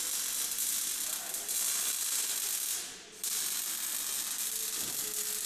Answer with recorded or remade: recorded